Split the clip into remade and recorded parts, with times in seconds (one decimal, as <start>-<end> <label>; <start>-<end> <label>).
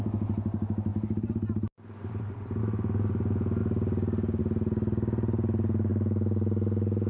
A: 0.0-7.1 recorded